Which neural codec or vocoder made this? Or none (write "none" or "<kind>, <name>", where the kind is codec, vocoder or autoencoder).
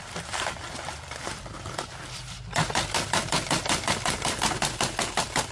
none